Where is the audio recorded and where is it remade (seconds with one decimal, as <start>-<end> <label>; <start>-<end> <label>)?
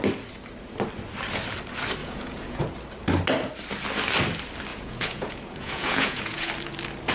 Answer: 0.0-2.0 recorded; 2.0-2.6 remade; 2.6-4.7 recorded; 4.7-6.5 remade; 6.5-7.1 recorded